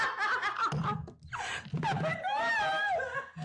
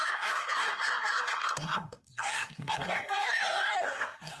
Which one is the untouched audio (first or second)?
first